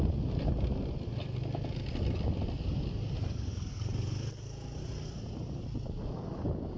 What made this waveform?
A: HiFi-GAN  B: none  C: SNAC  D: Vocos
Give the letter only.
B